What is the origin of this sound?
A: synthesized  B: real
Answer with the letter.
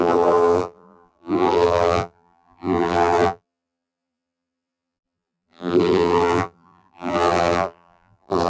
A